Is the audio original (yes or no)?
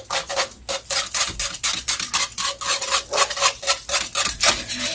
yes